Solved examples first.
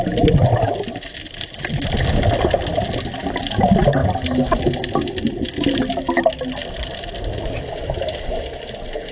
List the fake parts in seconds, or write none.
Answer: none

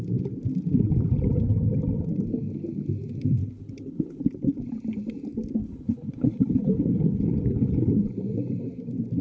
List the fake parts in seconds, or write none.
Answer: 3.4-4.2; 5.6-7.9